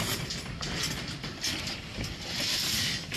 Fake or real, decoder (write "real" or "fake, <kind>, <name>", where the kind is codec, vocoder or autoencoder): real